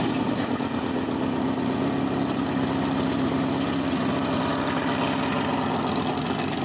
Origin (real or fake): real